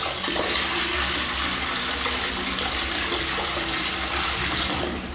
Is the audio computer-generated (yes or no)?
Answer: no